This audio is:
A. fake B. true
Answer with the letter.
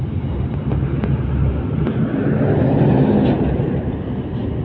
B